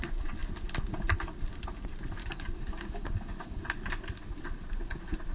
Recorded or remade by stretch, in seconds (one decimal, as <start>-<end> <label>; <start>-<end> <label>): 0.0-2.2 recorded; 2.2-3.6 remade; 3.6-5.3 recorded